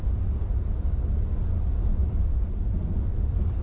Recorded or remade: remade